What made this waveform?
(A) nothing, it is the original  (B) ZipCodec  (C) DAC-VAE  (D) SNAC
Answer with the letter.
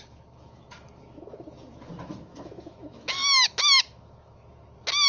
C